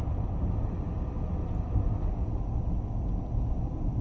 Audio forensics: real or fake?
real